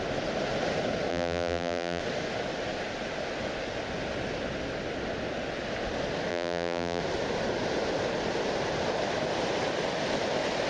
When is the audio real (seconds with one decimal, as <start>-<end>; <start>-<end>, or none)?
0.0-1.1; 2.0-6.3; 7.0-10.7